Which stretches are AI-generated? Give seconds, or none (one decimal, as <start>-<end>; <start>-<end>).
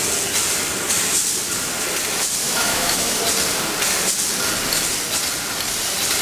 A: 2.4-3.2